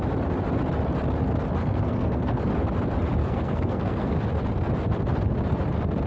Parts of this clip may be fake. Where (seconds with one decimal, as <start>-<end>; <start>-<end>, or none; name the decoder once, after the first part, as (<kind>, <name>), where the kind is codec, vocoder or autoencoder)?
1.6-2.5 (codec, SNAC); 3.2-4.2